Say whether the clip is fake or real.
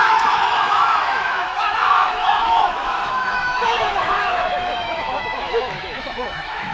fake